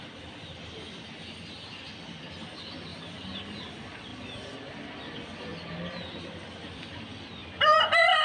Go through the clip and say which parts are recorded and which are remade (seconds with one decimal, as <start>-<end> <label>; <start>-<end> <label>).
0.0-7.4 recorded; 7.4-8.2 remade